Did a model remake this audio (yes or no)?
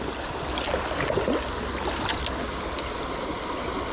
no